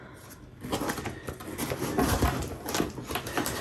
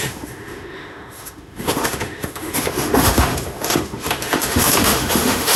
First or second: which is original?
first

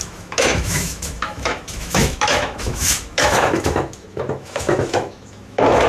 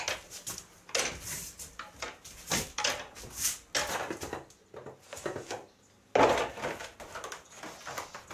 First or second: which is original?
second